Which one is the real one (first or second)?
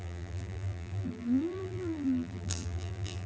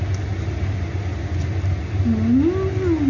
second